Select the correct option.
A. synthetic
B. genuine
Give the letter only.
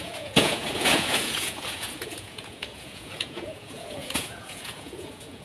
A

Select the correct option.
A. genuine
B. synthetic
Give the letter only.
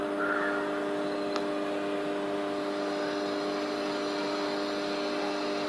A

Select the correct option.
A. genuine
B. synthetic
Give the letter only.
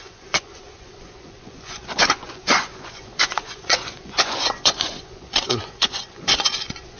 B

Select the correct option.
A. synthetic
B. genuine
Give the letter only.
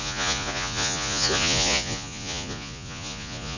A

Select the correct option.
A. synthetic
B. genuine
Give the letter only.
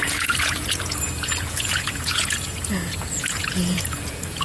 A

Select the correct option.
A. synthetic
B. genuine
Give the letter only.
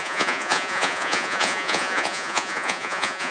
A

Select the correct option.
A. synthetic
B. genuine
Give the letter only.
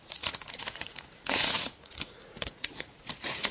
A